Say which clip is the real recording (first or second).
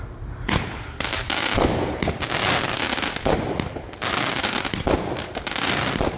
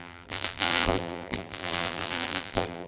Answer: first